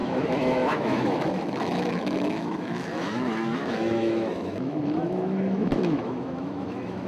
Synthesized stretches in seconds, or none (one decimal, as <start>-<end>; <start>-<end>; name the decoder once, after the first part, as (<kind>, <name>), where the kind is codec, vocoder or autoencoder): 0.0-7.1 (autoencoder, DAC-VAE)